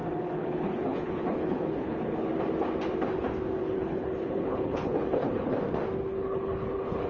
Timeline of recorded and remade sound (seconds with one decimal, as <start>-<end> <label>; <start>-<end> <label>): 0.0-2.3 remade; 2.3-3.6 recorded; 3.6-5.5 remade; 5.5-6.1 recorded; 6.1-7.1 remade

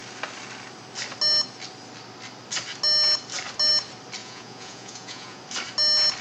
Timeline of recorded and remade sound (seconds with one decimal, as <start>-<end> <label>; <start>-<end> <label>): 0.0-4.2 recorded; 4.2-5.4 remade; 5.4-6.2 recorded

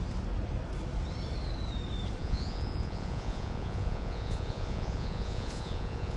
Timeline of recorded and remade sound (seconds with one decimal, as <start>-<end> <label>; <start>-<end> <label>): 0.0-2.2 recorded; 2.2-6.2 remade

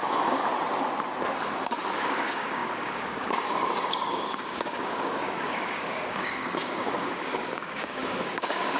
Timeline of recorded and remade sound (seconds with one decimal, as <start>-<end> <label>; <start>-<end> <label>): 0.0-0.4 remade; 0.4-1.6 recorded; 1.6-8.8 remade

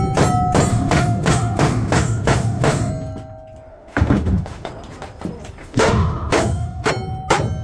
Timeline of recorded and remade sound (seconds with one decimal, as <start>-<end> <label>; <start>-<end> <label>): 0.0-0.7 recorded; 0.7-2.9 remade; 2.9-3.7 recorded; 3.7-4.7 remade; 4.7-5.6 recorded; 5.6-6.9 remade; 6.9-7.6 recorded

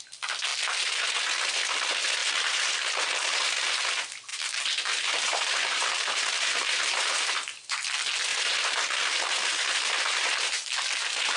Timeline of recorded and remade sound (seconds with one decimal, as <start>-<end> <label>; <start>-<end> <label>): 0.0-2.2 recorded; 2.2-3.7 remade; 3.7-4.3 recorded; 4.3-7.3 remade; 7.3-8.3 recorded; 8.3-11.4 remade